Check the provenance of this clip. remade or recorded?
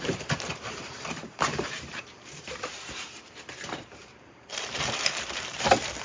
remade